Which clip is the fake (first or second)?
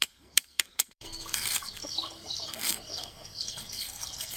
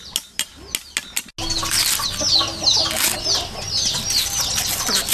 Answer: first